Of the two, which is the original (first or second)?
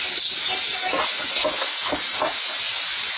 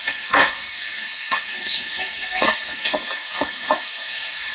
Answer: first